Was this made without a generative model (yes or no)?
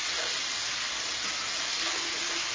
yes